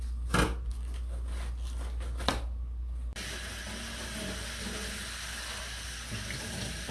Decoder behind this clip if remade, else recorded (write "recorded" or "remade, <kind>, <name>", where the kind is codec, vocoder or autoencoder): recorded